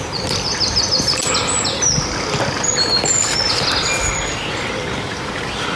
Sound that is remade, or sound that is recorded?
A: recorded